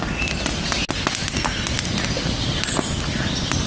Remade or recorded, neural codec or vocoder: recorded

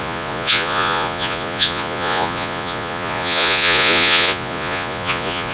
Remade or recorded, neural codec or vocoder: remade, vocoder, Vocos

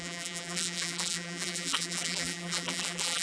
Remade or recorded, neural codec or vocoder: remade, vocoder, BigVGAN v2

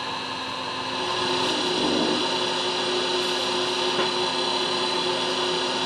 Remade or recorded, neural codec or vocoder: recorded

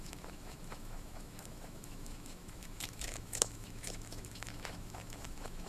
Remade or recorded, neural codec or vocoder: remade, autoencoder, DAC-VAE